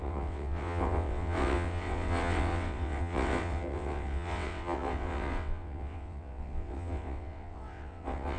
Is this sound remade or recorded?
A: remade